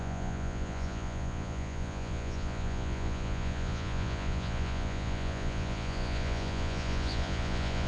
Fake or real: fake